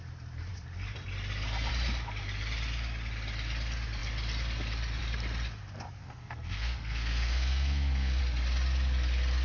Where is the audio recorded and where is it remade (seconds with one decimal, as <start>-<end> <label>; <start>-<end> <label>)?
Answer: 0.0-6.0 recorded; 6.0-8.2 remade; 8.2-9.4 recorded